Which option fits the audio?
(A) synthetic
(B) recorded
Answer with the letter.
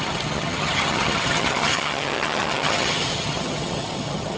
A